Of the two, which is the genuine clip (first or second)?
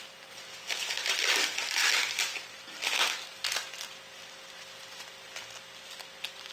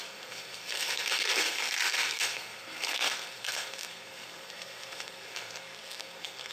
first